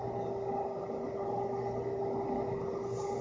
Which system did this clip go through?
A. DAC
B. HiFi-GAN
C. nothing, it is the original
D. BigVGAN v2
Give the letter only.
C